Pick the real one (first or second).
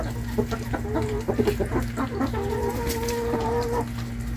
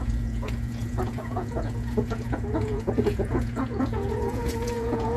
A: first